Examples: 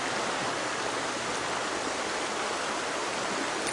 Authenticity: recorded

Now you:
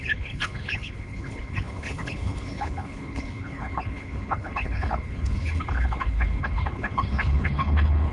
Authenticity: remade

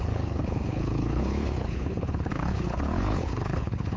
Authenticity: remade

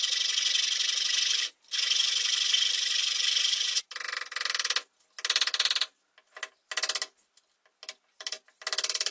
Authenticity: recorded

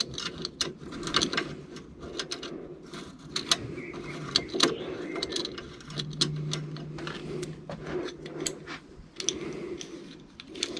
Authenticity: recorded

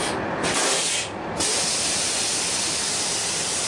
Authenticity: recorded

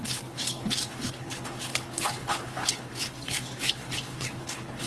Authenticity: remade